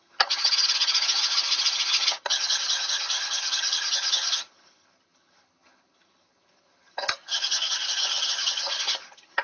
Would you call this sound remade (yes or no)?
yes